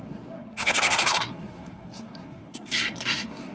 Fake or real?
fake